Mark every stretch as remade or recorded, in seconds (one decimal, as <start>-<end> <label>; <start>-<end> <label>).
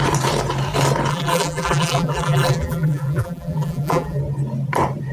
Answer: 0.0-1.1 recorded; 1.1-4.2 remade; 4.2-5.1 recorded